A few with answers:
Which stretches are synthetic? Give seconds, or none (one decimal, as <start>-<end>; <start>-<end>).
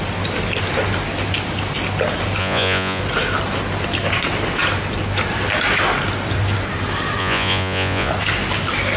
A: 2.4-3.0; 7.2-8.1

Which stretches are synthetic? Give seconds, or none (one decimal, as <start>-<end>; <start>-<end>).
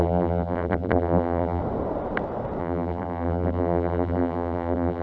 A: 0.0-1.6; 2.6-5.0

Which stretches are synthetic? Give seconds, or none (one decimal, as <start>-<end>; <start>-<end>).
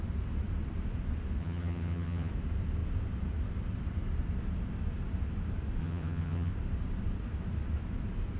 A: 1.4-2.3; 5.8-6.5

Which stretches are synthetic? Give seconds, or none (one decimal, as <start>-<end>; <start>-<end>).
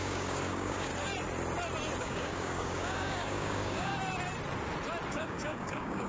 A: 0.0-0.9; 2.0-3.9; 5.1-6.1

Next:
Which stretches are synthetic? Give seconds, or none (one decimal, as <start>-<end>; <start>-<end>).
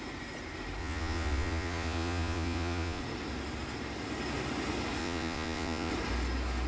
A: 0.8-3.0; 5.0-5.9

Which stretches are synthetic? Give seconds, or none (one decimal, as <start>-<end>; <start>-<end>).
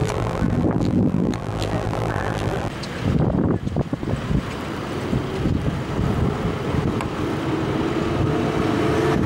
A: 0.0-2.7